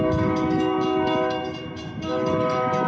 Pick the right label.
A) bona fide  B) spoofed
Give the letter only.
B